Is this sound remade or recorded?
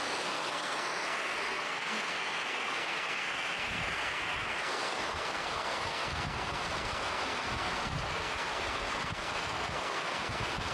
remade